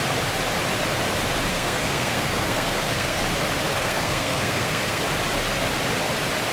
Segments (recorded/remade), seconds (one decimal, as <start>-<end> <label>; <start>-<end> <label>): 0.0-1.5 recorded; 1.5-3.2 remade; 3.2-3.7 recorded; 3.7-5.0 remade; 5.0-6.5 recorded